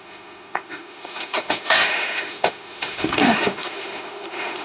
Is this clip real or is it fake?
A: fake